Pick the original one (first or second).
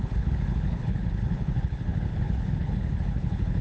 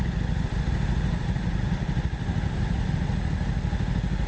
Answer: second